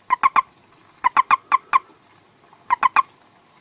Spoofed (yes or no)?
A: no